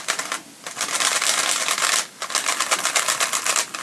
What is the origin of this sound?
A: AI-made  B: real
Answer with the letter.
B